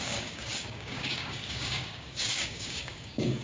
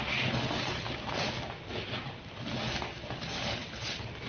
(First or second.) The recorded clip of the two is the second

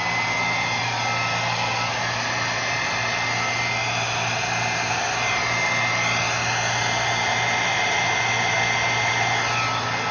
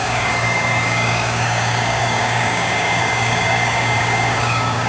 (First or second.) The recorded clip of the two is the first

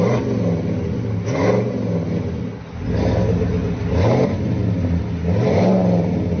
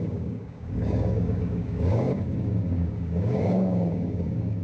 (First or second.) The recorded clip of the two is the first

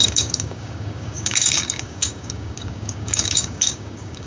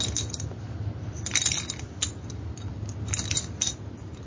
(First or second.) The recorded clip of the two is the second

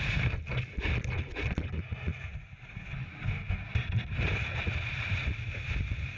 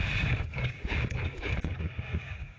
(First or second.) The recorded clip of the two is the first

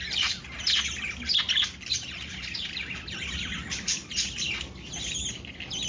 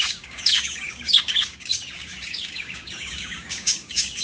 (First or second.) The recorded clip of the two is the first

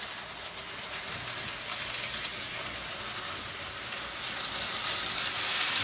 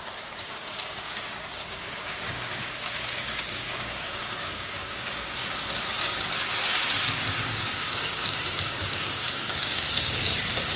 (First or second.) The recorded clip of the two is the first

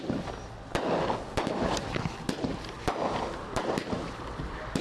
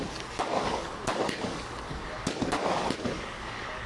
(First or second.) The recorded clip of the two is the first